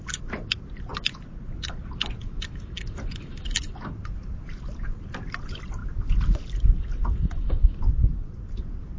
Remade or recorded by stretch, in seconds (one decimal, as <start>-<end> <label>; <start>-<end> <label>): 0.0-9.0 recorded